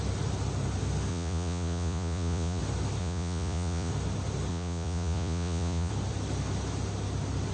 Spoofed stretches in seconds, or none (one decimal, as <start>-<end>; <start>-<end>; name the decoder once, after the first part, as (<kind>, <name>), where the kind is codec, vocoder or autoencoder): 1.1-2.6 (vocoder, Vocos); 3.0-3.9; 4.5-5.9